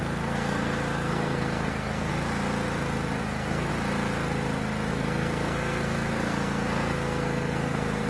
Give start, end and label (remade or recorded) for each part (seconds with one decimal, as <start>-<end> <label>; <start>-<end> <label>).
0.0-2.1 remade; 2.1-3.2 recorded; 3.2-3.7 remade; 3.7-4.9 recorded; 4.9-8.1 remade